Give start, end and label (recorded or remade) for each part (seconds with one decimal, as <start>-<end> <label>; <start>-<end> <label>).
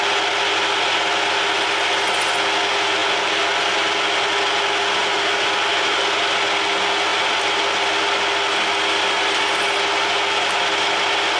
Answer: 0.0-11.4 recorded